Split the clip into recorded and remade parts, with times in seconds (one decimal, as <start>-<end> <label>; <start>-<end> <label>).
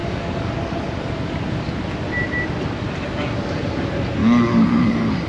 0.0-1.1 remade; 1.1-4.2 recorded; 4.2-5.3 remade